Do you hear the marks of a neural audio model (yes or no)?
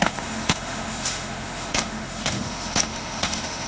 yes